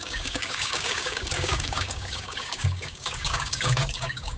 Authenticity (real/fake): fake